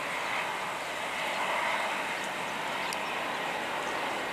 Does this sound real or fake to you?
real